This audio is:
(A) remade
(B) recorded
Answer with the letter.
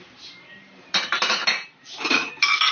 A